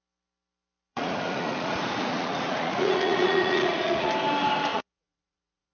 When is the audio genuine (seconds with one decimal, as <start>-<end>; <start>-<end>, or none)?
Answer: 0.0-0.9; 4.1-4.7